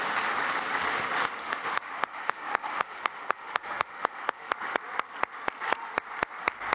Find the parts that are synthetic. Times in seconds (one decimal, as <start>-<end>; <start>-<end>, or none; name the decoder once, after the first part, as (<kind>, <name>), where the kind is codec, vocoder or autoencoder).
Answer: 1.4-4.5 (autoencoder, DAC-VAE)